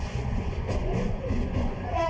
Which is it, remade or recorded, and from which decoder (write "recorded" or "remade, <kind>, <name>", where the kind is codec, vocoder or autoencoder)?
remade, vocoder, Vocos